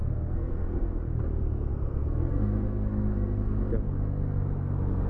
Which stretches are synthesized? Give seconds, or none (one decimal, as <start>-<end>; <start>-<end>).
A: 0.0-1.0; 1.7-3.6